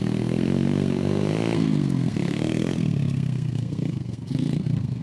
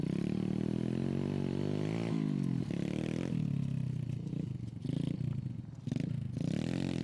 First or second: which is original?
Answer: second